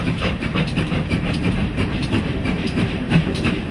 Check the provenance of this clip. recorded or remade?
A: remade